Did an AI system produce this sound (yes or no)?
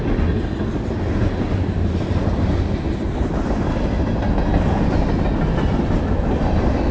no